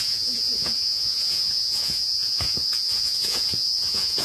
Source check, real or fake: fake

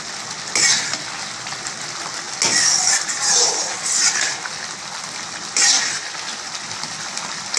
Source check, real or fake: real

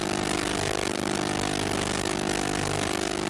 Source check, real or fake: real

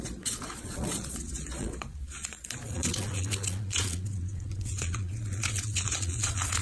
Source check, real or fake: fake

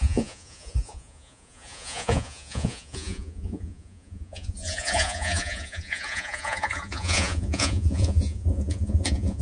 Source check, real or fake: fake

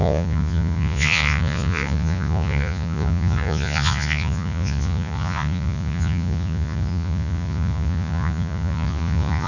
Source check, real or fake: fake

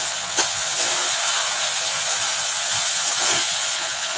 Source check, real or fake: fake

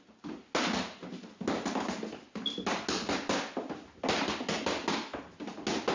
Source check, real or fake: real